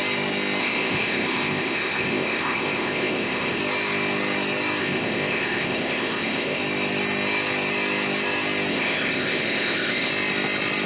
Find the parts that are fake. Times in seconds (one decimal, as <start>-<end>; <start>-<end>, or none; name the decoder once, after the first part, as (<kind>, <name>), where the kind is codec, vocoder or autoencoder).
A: 0.6-3.6 (codec, ZipCodec); 4.8-6.6; 8.7-10.1